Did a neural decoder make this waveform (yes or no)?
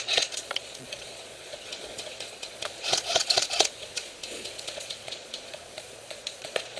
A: yes